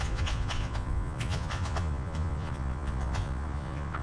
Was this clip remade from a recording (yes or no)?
yes